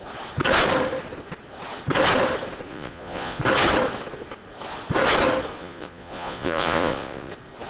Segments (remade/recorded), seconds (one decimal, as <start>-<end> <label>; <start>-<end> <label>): 0.0-2.7 recorded; 2.7-3.4 remade; 3.4-5.6 recorded; 5.6-7.3 remade; 7.3-7.7 recorded